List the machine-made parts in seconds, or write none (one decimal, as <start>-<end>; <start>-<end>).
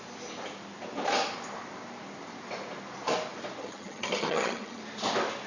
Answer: 3.6-4.8